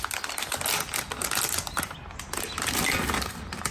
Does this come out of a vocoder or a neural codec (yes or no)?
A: no